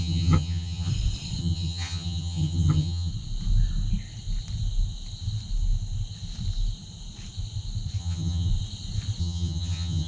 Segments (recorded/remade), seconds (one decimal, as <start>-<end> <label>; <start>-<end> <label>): 0.0-0.9 remade; 0.9-1.4 recorded; 1.4-3.1 remade; 3.1-8.0 recorded; 8.0-8.5 remade; 8.5-9.2 recorded; 9.2-10.1 remade

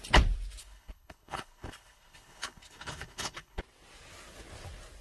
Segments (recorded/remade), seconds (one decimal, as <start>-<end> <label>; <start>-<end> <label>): 0.0-0.6 recorded; 0.6-3.6 remade; 3.6-5.0 recorded